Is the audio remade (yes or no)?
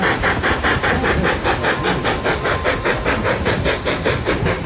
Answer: no